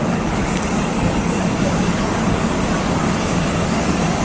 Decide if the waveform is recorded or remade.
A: remade